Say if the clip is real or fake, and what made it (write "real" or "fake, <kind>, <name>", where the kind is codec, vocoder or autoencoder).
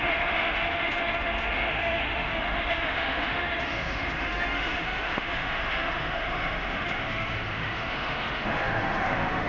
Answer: fake, autoencoder, DAC-VAE